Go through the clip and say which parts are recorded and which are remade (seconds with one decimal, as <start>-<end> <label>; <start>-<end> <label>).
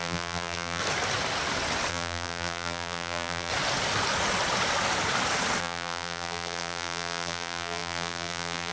0.0-0.8 remade; 0.8-1.9 recorded; 1.9-3.5 remade; 3.5-5.6 recorded; 5.6-8.7 remade